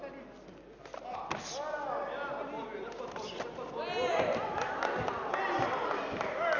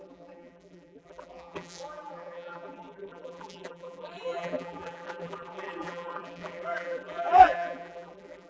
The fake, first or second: second